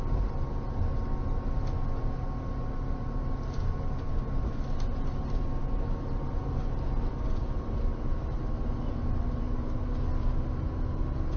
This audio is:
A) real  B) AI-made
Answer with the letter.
A